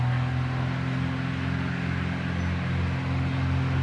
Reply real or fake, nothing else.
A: real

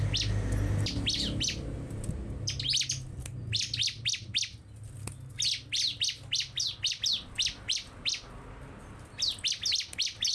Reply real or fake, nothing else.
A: real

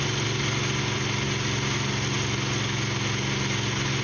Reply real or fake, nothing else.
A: real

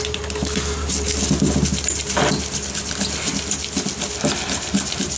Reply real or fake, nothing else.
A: real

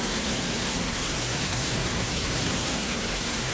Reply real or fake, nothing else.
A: fake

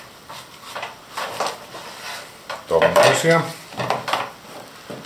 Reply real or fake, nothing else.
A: fake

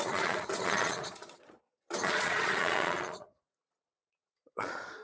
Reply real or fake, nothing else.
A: fake